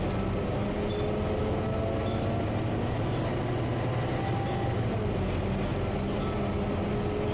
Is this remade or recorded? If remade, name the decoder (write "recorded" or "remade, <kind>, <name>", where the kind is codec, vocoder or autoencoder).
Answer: recorded